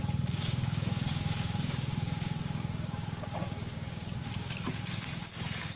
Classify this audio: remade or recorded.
remade